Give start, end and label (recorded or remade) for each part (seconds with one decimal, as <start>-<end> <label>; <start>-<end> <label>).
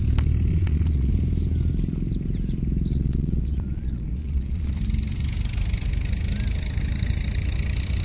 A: 0.0-0.5 recorded; 0.5-1.1 remade; 1.1-2.9 recorded; 2.9-4.7 remade; 4.7-8.0 recorded